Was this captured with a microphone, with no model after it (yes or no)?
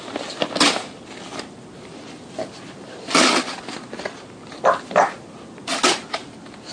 yes